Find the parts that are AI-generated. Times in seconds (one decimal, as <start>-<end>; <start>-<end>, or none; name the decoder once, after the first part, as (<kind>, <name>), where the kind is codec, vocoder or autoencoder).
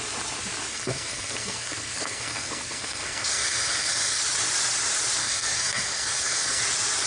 0.7-4.2 (codec, SNAC); 5.2-6.6